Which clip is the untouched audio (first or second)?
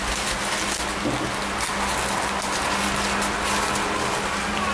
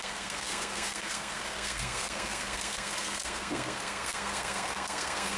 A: first